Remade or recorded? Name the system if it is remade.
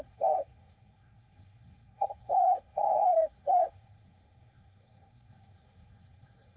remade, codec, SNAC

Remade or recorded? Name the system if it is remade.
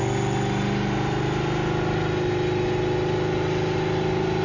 recorded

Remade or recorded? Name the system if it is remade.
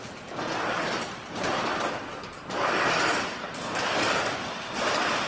remade, vocoder, BigVGAN v2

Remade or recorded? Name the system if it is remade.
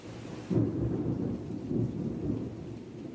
remade, vocoder, BigVGAN v2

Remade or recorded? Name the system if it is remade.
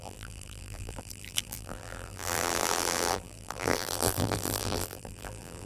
remade, vocoder, BigVGAN v2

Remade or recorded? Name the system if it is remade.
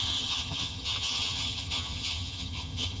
remade, vocoder, HiFi-GAN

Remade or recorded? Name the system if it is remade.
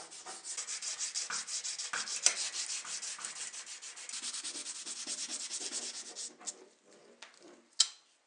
recorded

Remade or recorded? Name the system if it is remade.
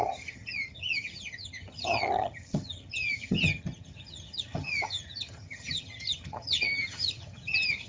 remade, vocoder, HiFi-GAN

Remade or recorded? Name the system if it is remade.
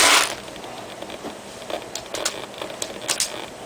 recorded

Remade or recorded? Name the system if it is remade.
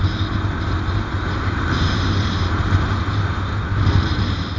recorded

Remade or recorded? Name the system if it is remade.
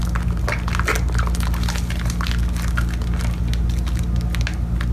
recorded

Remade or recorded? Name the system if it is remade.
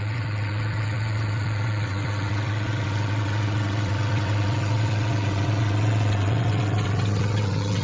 remade, vocoder, WaveNeXt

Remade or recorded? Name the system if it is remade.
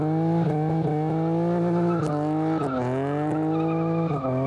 recorded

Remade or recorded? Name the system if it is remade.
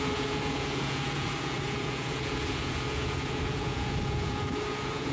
remade, vocoder, Vocos